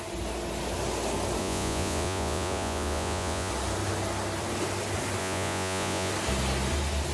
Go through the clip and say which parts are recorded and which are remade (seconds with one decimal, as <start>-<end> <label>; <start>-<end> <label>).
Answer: 0.0-1.4 recorded; 1.4-3.5 remade; 3.5-5.2 recorded; 5.2-6.1 remade; 6.1-7.1 recorded